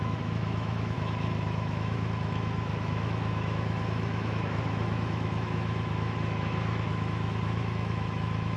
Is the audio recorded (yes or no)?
no